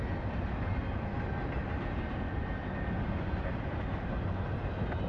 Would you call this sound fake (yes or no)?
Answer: no